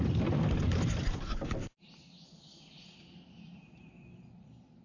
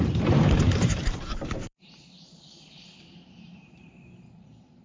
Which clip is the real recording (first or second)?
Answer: first